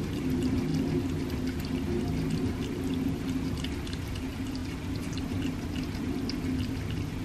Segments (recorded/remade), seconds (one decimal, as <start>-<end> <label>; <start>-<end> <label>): 0.0-7.2 recorded